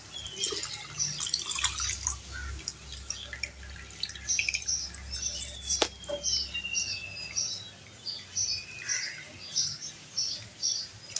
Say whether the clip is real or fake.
real